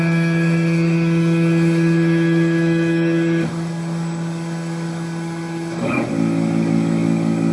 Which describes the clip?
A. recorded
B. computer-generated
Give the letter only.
B